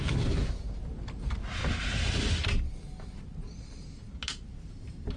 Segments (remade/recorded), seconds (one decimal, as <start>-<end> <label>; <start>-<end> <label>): 0.0-5.2 recorded